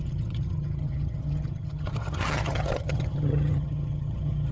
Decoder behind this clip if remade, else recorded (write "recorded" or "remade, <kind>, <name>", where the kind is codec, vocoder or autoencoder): remade, vocoder, HiFi-GAN